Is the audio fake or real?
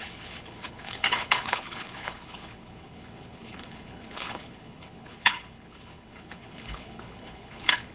fake